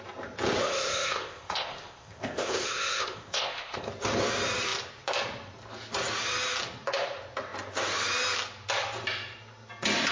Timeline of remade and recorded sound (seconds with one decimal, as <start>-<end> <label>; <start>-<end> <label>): 0.0-0.6 recorded; 0.6-3.9 remade; 3.9-10.1 recorded